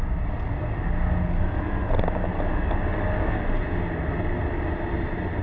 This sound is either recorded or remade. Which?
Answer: recorded